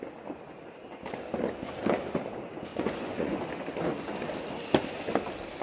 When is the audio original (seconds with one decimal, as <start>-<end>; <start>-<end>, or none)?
0.0-2.7; 3.4-5.6